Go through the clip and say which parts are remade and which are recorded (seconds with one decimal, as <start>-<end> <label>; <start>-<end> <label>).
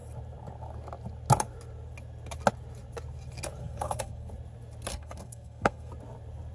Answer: 0.0-3.6 recorded; 3.6-4.3 remade; 4.3-4.9 recorded; 4.9-5.9 remade; 5.9-6.5 recorded